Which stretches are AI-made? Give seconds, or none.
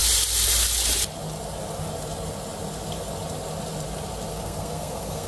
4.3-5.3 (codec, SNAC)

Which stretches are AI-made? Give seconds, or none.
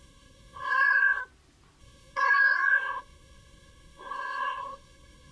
0.0-1.2 (codec, SNAC); 1.8-5.3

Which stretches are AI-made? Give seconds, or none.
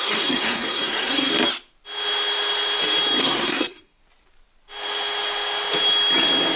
0.0-1.3 (codec, SNAC); 3.2-4.0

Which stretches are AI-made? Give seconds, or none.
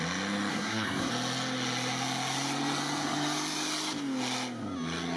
0.5-1.1 (codec, SNAC)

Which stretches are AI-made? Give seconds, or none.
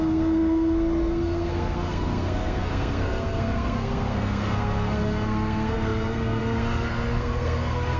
0.0-8.0 (codec, SNAC)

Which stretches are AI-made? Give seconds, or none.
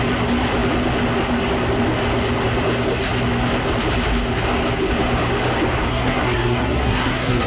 5.9-7.5 (codec, SNAC)